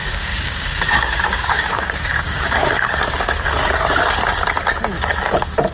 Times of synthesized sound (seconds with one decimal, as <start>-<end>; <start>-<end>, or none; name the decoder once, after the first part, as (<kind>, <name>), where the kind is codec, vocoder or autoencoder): 0.0-3.4 (codec, DAC)